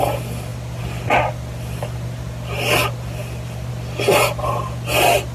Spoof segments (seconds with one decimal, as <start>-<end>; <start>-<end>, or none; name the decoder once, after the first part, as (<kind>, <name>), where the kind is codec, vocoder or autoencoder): none